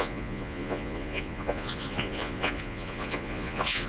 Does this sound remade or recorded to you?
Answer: remade